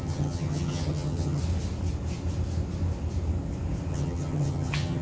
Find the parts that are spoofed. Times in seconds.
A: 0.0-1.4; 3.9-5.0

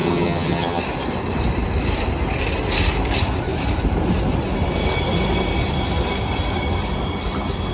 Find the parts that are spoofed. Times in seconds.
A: 0.0-0.8

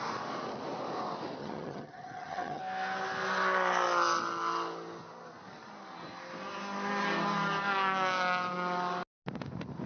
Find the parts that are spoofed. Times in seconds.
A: 1.4-2.6

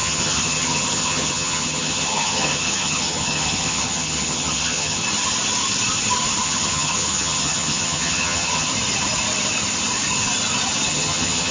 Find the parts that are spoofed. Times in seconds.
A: 0.0-5.0; 6.4-8.7; 10.9-11.5

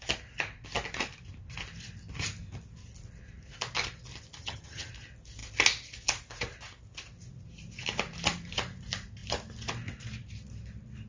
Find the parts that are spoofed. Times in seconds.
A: 4.4-4.9

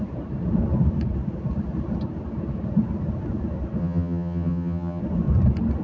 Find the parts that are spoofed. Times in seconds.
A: 3.8-5.0

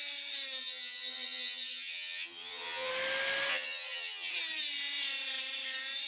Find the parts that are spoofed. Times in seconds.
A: 0.6-2.9; 3.5-4.3